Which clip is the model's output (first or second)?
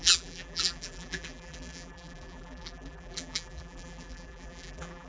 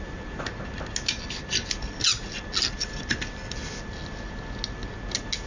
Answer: first